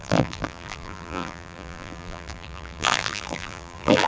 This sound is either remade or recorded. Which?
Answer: remade